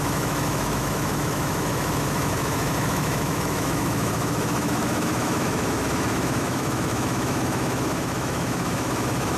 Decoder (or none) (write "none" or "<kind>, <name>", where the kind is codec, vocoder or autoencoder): autoencoder, DAC-VAE